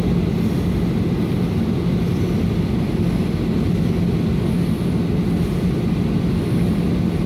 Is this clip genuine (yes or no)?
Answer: yes